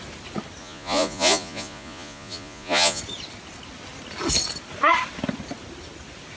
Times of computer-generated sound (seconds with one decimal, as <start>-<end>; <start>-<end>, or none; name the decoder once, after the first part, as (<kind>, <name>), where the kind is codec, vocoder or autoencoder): 0.6-3.0 (vocoder, Vocos)